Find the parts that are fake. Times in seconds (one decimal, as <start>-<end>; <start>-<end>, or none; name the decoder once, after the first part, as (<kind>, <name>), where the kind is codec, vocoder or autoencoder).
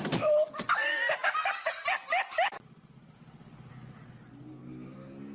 none